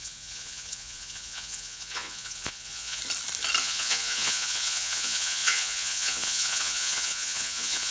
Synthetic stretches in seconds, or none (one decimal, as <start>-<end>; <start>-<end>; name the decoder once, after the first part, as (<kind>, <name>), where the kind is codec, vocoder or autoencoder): 0.0-3.0 (vocoder, Vocos); 3.6-7.9